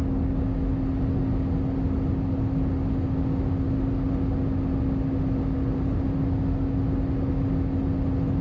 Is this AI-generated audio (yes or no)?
no